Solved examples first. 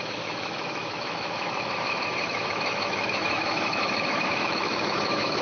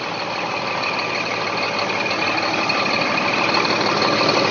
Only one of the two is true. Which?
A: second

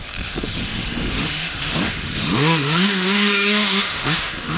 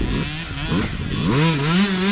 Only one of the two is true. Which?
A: second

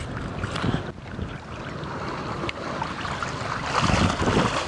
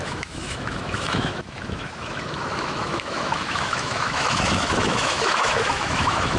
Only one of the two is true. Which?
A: first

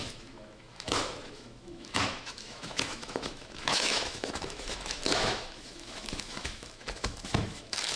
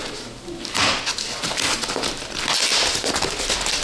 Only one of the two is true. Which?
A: second